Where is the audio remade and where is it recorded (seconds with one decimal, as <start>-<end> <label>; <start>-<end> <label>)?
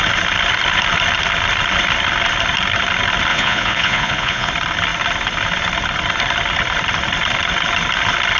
0.0-3.3 recorded; 3.3-4.5 remade; 4.5-8.4 recorded